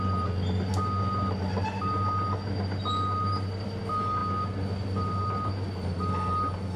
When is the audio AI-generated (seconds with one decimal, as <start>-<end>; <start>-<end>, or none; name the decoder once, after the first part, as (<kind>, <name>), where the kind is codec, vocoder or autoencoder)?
none